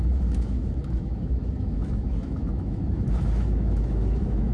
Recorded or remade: remade